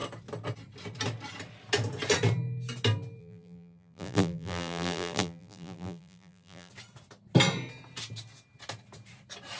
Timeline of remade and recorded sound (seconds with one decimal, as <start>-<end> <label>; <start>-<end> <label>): 0.0-3.2 recorded; 3.2-6.7 remade; 6.7-9.6 recorded